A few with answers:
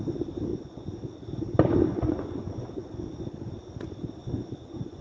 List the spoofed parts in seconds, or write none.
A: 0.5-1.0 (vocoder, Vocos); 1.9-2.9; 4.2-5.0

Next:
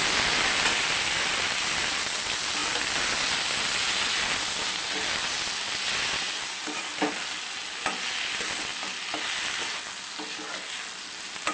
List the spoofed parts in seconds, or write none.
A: none

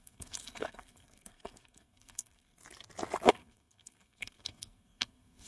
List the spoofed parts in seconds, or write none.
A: 0.0-2.6 (codec, SNAC); 3.3-5.5

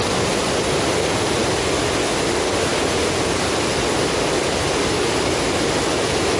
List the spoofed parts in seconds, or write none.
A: none

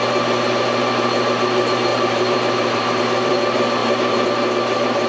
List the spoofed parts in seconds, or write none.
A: 1.9-3.0 (vocoder, BigVGAN v2); 3.8-5.1

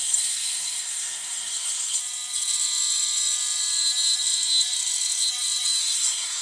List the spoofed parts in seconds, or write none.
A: 0.0-2.0 (codec, SNAC); 5.8-6.4

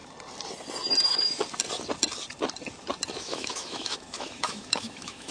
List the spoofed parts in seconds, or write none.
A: 3.2-5.3 (autoencoder, DAC-VAE)